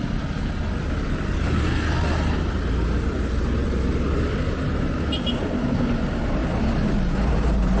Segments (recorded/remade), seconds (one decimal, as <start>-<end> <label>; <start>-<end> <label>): 0.0-7.8 recorded